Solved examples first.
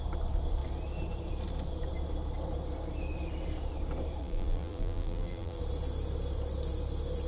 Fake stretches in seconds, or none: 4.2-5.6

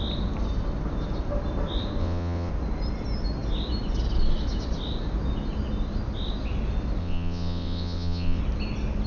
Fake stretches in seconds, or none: 2.0-2.5; 7.0-8.4

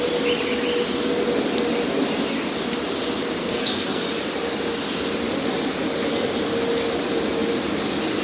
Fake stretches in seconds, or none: 3.4-4.1

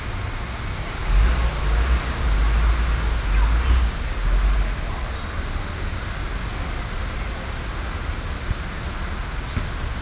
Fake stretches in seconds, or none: none

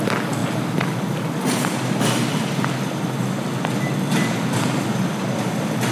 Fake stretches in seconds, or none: none